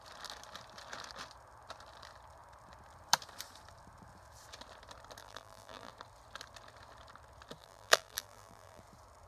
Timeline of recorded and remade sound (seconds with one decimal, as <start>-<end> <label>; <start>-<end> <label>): 0.0-5.2 recorded; 5.2-5.9 remade; 5.9-7.6 recorded; 7.6-8.8 remade; 8.8-9.3 recorded